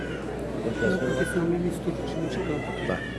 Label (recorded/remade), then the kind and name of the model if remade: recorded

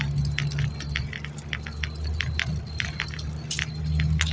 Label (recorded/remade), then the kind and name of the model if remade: recorded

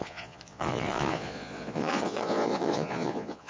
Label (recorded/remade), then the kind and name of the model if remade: remade, vocoder, Vocos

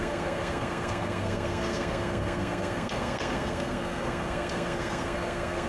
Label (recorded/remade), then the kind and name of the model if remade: remade, codec, SNAC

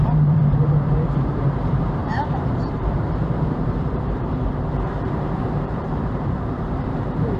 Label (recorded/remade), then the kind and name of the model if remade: remade, vocoder, BigVGAN v2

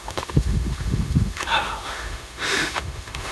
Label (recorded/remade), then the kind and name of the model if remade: remade, autoencoder, DAC-VAE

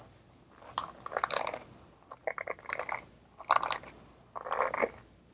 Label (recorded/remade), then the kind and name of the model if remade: recorded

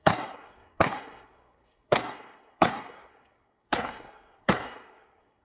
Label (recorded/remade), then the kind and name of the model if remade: remade, codec, SNAC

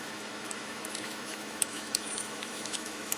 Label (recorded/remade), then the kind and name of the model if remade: remade, autoencoder, DAC-VAE